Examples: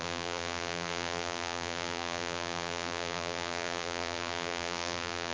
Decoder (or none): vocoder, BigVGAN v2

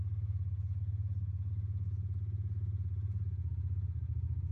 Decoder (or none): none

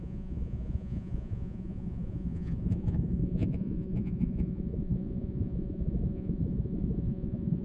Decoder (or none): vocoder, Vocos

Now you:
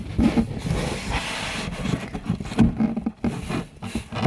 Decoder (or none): none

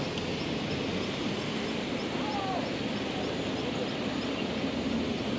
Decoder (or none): none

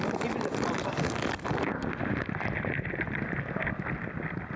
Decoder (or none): none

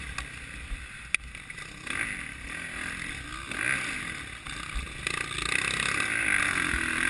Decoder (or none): none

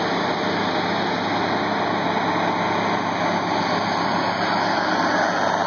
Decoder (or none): none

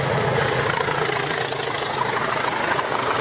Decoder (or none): vocoder, Vocos